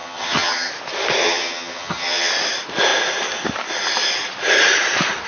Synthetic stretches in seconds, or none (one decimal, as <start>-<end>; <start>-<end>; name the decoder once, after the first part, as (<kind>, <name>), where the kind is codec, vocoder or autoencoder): 0.0-0.7 (vocoder, HiFi-GAN); 1.2-2.3